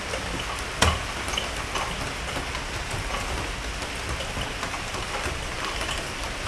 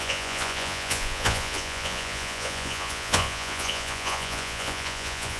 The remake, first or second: second